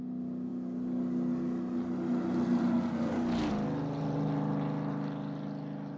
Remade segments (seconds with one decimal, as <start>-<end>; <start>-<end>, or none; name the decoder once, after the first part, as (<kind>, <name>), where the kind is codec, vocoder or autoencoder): none